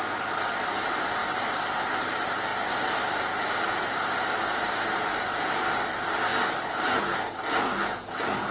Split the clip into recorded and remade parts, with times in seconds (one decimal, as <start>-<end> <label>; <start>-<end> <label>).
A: 0.0-8.5 recorded